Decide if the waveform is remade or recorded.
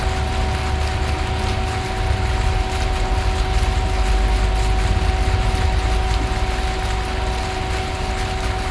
recorded